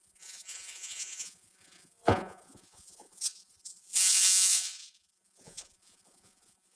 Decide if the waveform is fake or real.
fake